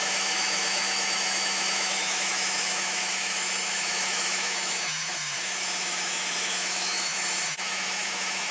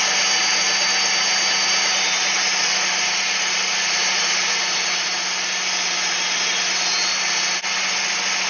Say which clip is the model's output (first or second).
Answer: first